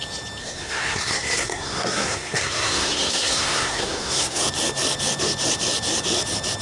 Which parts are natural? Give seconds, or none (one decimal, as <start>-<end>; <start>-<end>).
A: 0.0-0.4; 4.4-6.6